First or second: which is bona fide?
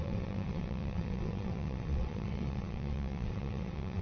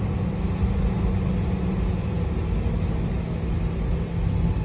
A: second